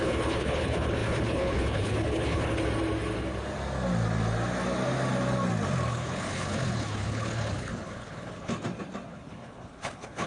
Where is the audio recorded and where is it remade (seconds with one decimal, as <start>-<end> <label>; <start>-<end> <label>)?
0.0-2.6 remade; 2.6-5.9 recorded; 5.9-8.5 remade; 8.5-9.1 recorded; 9.1-10.3 remade